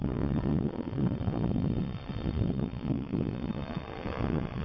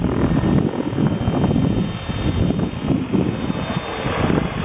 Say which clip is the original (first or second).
second